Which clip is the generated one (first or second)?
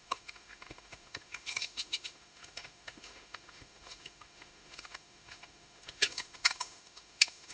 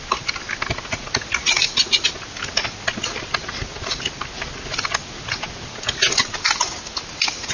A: first